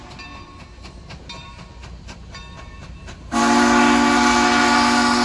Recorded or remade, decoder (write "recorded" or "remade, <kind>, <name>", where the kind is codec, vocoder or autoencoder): recorded